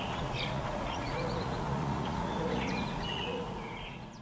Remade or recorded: remade